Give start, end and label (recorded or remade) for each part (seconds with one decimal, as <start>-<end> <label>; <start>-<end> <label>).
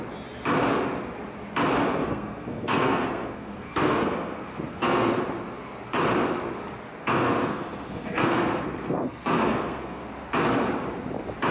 0.0-2.0 recorded; 2.0-5.2 remade; 5.2-7.0 recorded; 7.0-10.1 remade; 10.1-11.5 recorded